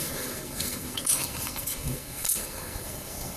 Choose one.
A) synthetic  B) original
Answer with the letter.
A